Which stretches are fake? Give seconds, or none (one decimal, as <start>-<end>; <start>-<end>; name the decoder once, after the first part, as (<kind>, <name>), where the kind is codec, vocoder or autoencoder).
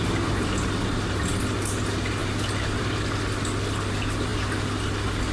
none